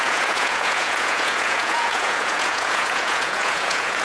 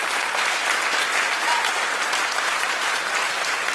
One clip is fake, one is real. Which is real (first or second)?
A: second